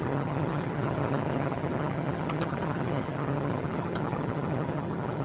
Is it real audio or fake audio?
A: fake